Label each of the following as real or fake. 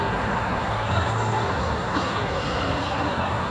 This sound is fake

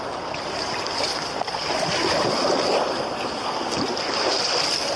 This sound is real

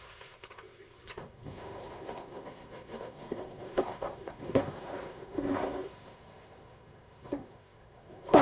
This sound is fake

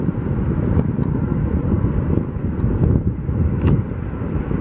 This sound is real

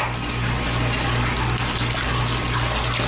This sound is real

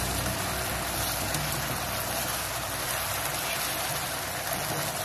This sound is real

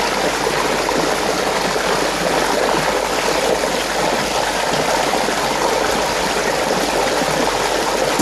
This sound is real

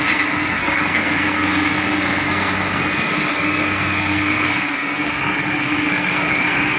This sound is fake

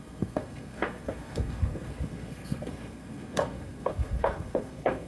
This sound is fake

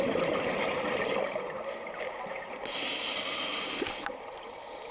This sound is real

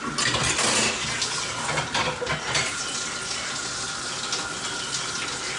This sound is real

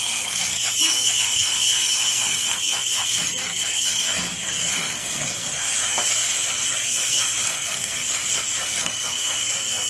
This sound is fake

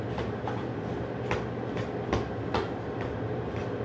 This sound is real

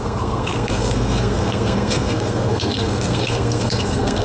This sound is fake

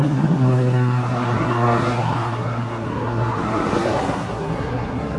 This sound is fake